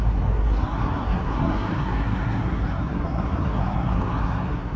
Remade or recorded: remade